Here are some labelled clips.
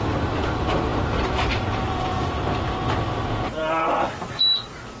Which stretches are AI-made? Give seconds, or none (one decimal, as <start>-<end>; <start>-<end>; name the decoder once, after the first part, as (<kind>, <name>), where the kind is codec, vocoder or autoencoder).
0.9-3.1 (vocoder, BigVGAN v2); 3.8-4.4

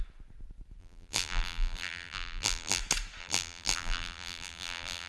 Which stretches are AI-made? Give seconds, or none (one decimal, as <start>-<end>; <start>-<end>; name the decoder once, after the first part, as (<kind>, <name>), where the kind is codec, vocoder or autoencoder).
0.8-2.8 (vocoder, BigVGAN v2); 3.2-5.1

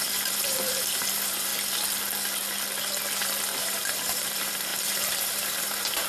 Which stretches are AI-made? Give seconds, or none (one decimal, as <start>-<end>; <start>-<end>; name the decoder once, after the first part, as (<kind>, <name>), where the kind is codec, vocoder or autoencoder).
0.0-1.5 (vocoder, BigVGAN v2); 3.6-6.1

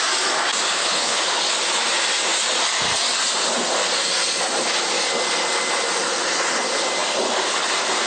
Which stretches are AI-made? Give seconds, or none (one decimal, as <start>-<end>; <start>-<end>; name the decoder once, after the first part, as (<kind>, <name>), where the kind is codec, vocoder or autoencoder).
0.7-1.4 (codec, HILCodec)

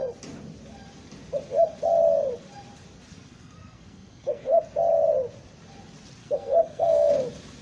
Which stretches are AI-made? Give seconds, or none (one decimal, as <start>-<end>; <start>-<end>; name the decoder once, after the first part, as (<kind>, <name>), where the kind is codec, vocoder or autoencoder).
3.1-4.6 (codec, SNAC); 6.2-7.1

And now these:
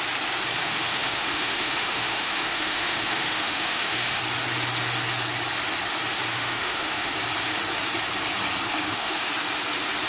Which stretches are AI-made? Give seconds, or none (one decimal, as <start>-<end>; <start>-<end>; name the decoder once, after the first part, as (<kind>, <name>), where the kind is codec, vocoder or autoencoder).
0.6-4.2 (autoencoder, DAC-VAE); 6.3-7.1; 8.7-9.3

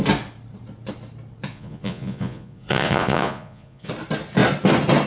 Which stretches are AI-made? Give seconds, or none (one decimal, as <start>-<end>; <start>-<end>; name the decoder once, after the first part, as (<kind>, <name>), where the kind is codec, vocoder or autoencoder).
1.5-3.9 (vocoder, Vocos)

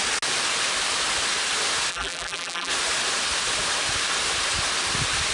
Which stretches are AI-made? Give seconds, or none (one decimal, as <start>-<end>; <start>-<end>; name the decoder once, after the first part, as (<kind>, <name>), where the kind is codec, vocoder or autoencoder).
1.9-2.7 (vocoder, BigVGAN v2)